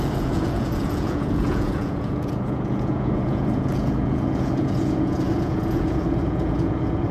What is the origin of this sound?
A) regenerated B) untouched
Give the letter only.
A